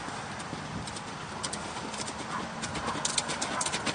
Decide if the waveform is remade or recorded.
recorded